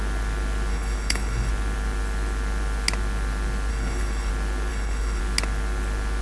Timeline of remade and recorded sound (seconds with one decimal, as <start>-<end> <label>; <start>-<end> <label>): 0.0-0.7 recorded; 0.7-1.5 remade; 1.5-3.7 recorded; 3.7-4.3 remade; 4.3-4.7 recorded; 4.7-5.2 remade; 5.2-6.2 recorded